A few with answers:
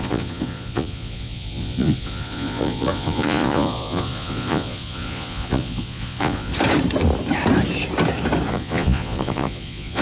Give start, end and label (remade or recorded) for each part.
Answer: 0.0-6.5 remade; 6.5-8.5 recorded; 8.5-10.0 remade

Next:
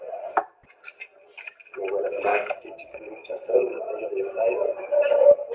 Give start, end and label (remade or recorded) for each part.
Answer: 0.0-2.3 recorded; 2.3-3.8 remade; 3.8-5.5 recorded